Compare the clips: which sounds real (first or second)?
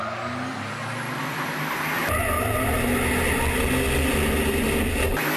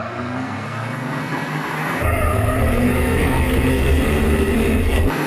first